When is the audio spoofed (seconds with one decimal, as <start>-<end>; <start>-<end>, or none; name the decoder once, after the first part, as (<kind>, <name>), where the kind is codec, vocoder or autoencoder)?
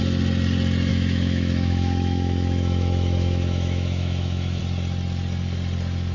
0.9-4.6 (autoencoder, DAC-VAE)